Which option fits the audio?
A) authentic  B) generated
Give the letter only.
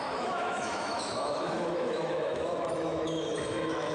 B